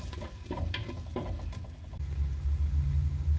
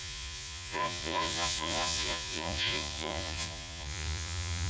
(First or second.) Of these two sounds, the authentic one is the first